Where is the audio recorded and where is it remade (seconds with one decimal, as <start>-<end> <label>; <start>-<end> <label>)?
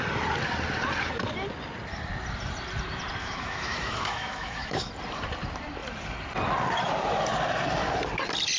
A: 0.0-3.2 recorded; 3.2-4.9 remade; 4.9-8.6 recorded